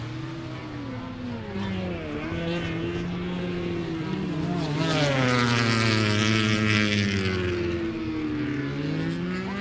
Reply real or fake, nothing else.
real